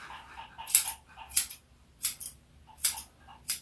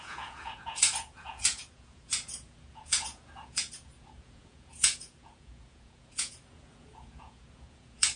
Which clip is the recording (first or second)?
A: first